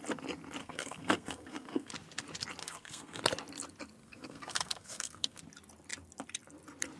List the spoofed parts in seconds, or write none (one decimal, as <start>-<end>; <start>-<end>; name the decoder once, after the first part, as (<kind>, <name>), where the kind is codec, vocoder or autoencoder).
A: 0.6-1.9 (codec, SNAC); 2.6-3.2; 4.0-5.4